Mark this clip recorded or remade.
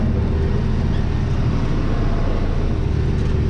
recorded